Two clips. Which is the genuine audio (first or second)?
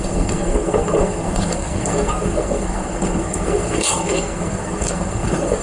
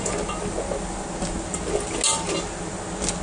second